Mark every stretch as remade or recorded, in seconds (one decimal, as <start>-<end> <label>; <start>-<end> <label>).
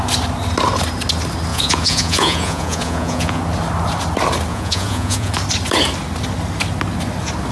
0.0-1.5 recorded; 1.5-3.4 remade; 3.4-4.5 recorded; 4.5-5.3 remade; 5.3-7.5 recorded